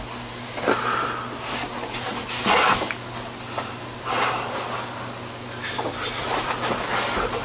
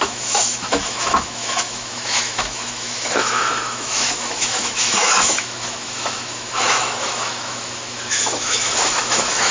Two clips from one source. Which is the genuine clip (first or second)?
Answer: first